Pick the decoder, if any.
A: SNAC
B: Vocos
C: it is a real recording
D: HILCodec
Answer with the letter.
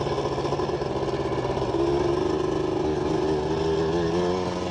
C